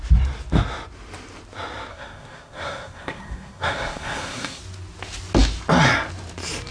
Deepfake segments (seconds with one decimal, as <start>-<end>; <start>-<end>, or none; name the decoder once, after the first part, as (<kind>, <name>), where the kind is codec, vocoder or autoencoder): 1.9-4.6 (codec, SNAC)